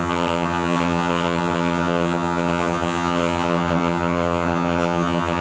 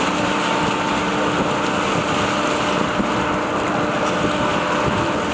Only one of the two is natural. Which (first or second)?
second